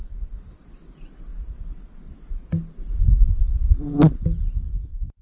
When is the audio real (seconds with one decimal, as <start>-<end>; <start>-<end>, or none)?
0.0-5.2